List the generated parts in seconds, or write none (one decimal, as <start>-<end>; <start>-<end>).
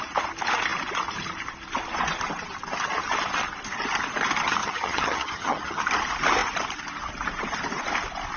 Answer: 4.6-5.8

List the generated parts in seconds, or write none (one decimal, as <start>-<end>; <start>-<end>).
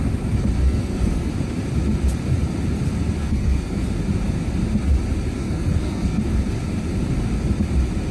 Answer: 0.6-1.3; 3.2-3.8; 5.4-6.2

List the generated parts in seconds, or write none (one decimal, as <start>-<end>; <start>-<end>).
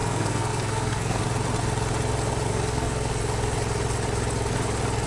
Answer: 0.0-1.2; 2.5-3.1